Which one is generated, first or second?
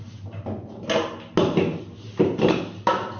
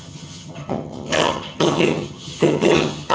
second